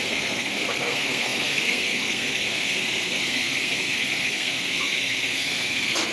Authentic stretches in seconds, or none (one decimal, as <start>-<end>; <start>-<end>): none